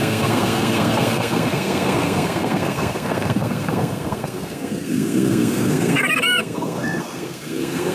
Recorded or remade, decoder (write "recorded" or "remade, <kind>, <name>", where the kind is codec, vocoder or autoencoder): remade, codec, SNAC